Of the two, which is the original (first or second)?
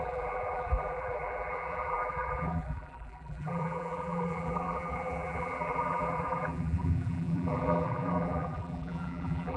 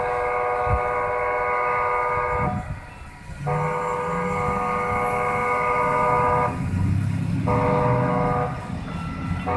second